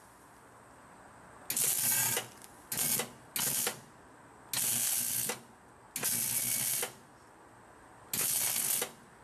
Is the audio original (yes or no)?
yes